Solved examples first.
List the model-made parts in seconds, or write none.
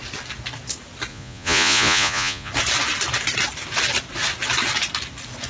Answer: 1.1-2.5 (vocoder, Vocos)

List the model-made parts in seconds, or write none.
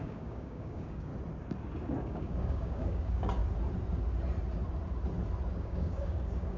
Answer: 0.0-1.1 (codec, DAC); 2.0-3.4; 5.5-6.6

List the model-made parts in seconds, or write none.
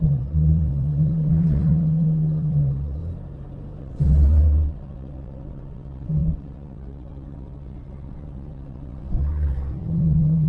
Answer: 0.0-3.0 (vocoder, WaveNeXt); 3.8-10.5